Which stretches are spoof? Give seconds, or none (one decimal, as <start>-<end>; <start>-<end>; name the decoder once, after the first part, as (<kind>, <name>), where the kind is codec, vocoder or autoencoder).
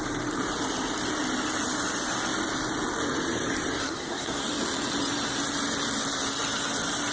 3.8-4.4 (codec, SNAC)